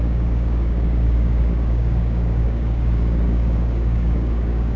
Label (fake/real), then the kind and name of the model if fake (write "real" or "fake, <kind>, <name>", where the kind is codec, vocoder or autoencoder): fake, codec, DAC